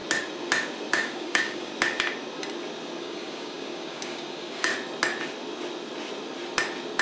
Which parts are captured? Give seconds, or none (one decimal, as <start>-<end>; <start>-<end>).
0.0-0.9; 1.7-3.0; 4.7-7.0